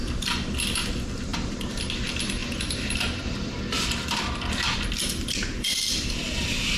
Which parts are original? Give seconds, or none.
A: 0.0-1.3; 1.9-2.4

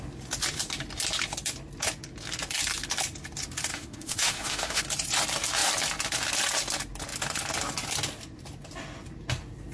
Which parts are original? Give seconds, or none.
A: 0.0-3.7; 4.8-9.7

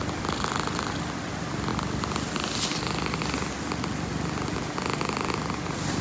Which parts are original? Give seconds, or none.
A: 0.0-6.0

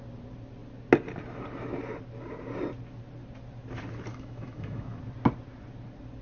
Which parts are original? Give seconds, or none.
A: 0.0-4.1; 5.0-6.2

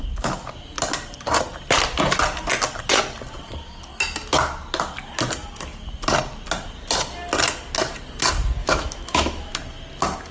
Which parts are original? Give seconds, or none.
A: 0.0-8.6; 9.5-10.3

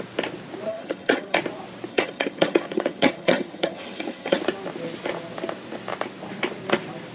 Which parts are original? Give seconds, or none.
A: 0.0-0.7; 1.4-1.9; 4.4-7.1

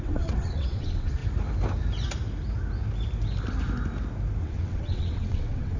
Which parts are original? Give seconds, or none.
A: 1.2-4.4

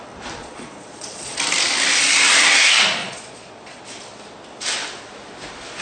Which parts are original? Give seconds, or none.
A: 0.0-0.4; 1.4-3.0; 3.8-5.8